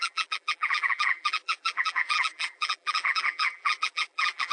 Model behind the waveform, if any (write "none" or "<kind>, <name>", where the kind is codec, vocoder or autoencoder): vocoder, BigVGAN v2